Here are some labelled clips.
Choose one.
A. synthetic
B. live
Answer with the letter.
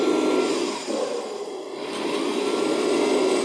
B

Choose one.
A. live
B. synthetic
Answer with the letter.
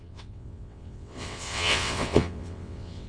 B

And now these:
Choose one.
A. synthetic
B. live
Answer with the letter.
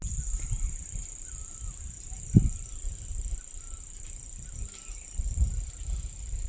B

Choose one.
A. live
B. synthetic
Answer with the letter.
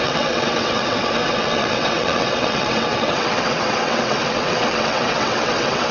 B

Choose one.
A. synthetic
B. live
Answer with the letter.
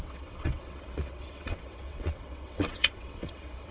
A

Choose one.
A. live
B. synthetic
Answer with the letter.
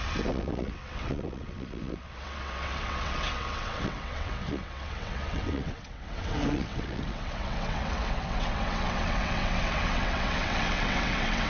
B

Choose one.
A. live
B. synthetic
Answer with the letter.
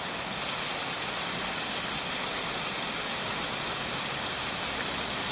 A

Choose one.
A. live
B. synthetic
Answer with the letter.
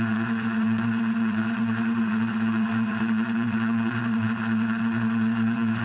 B